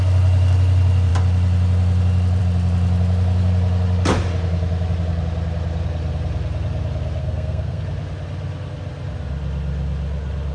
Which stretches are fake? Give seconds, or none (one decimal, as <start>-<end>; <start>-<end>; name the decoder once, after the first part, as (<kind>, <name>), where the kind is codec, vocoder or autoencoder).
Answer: 7.2-7.8 (codec, SNAC)